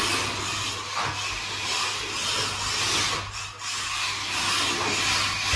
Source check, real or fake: real